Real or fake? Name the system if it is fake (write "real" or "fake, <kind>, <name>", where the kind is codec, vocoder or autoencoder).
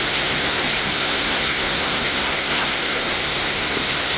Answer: fake, codec, SNAC